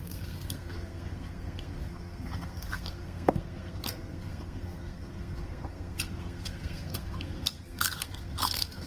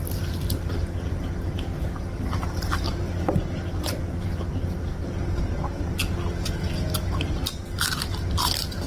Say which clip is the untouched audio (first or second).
second